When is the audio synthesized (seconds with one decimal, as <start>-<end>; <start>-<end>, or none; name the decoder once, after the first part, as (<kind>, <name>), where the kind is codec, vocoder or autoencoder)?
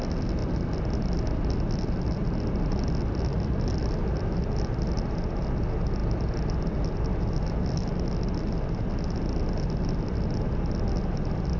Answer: none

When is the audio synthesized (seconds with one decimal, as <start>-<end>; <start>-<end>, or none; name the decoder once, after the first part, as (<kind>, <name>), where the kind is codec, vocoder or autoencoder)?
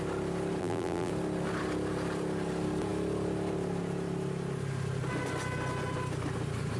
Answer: 0.6-1.1 (vocoder, BigVGAN v2)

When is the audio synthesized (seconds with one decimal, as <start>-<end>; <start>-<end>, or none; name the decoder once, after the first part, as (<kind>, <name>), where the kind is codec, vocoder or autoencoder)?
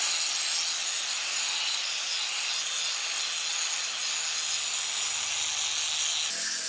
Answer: none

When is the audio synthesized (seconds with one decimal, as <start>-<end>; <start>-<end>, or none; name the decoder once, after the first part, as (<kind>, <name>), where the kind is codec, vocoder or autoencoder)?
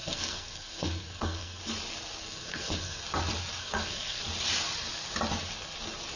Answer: 0.0-1.6 (codec, SNAC); 2.2-3.0; 3.6-4.2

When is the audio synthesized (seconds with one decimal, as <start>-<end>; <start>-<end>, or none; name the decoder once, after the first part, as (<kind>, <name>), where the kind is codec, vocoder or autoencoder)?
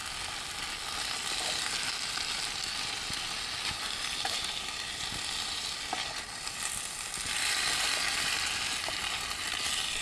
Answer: none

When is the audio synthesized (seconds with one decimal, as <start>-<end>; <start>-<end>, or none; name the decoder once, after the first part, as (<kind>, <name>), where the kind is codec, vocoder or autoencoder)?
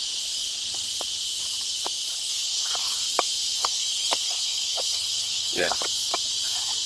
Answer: 2.1-3.0 (codec, HILCodec); 3.6-5.8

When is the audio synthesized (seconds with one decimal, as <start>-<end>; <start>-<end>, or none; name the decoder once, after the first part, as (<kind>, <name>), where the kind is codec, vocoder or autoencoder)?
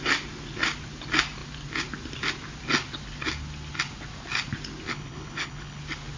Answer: 4.9-5.8 (codec, HILCodec)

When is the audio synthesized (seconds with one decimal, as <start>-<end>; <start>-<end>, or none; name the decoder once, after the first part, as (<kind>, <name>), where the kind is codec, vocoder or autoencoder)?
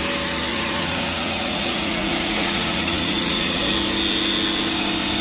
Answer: 0.5-3.6 (vocoder, Vocos)